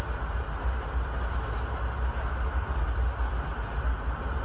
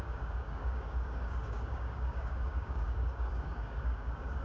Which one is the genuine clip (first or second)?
first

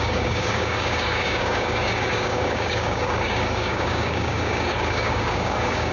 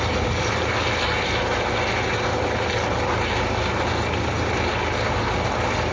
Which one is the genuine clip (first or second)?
second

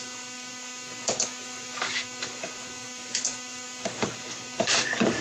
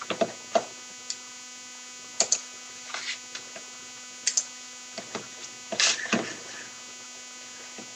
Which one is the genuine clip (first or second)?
second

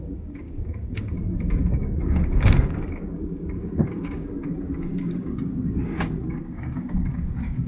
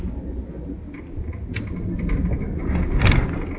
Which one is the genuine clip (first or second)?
second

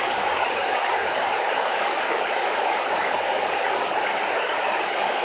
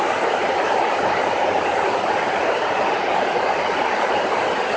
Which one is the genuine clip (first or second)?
second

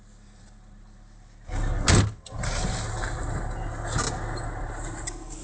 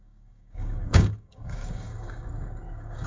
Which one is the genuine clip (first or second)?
first